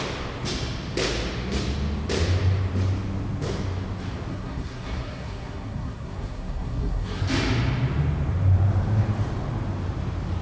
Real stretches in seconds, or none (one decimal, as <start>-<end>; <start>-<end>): 0.0-4.3; 7.2-10.4